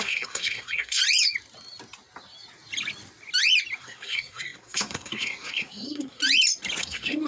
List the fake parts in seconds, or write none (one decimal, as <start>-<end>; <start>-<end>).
0.0-1.0; 3.8-6.2; 6.8-7.3